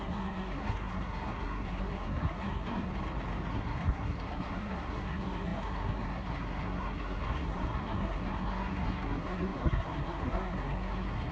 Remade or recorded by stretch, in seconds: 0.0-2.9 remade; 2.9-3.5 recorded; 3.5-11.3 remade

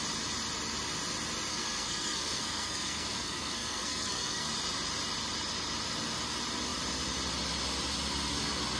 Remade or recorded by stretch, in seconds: 0.0-1.5 recorded; 1.5-4.5 remade; 4.5-8.8 recorded

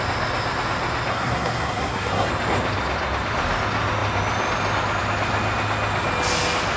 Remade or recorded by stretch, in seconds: 0.0-1.1 recorded; 1.1-2.3 remade; 2.3-6.8 recorded